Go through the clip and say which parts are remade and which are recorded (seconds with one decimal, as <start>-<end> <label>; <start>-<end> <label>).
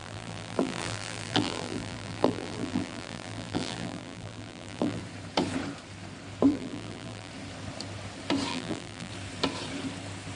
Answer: 0.0-5.0 remade; 5.0-6.5 recorded; 6.5-7.3 remade; 7.3-8.5 recorded; 8.5-9.1 remade; 9.1-10.4 recorded